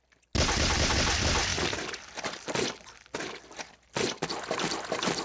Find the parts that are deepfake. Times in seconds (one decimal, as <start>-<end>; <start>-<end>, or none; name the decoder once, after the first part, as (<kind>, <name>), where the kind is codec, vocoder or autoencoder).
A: none